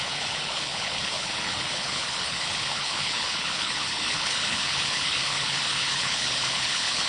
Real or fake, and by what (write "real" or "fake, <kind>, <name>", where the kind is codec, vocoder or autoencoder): fake, codec, HILCodec